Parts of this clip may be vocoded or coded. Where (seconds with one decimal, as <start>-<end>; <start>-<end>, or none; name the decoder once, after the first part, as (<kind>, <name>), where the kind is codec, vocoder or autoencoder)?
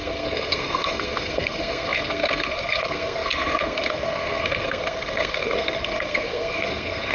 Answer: 0.0-7.1 (codec, SNAC)